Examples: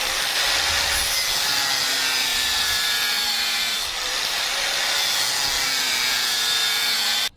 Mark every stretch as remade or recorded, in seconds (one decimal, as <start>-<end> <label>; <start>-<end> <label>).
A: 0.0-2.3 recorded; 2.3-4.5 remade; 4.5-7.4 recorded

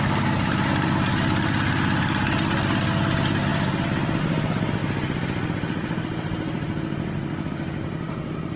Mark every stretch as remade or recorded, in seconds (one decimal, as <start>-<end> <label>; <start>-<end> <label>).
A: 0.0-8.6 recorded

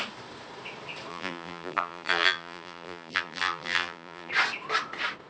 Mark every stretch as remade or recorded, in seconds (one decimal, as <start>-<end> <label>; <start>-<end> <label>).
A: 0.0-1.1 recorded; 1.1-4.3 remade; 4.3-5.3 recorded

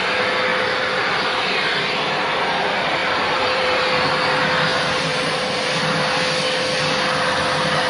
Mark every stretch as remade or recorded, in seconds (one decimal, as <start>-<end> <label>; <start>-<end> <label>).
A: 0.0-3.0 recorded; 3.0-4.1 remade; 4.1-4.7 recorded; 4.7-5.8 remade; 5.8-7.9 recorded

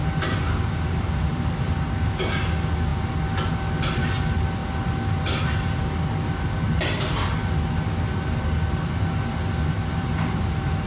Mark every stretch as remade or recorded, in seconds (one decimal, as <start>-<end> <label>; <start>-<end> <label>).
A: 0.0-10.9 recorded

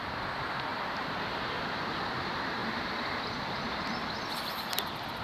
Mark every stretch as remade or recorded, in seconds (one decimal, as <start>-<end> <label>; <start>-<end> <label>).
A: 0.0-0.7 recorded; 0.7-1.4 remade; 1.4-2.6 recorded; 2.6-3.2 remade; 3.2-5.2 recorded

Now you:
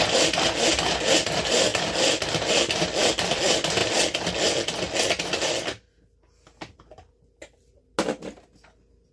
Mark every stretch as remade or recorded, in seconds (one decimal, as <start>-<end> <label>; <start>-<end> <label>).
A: 0.0-9.1 recorded

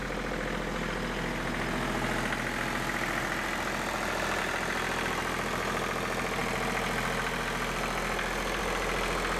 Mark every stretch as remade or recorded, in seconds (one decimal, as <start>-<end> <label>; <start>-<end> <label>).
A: 0.0-9.4 recorded